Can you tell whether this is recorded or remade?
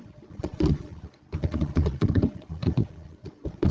remade